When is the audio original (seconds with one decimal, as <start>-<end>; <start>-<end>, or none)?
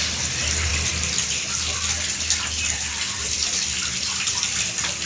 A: 0.0-5.1